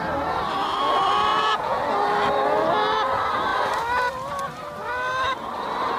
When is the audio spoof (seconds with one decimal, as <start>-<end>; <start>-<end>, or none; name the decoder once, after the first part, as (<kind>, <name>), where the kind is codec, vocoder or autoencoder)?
1.3-1.8 (vocoder, Vocos)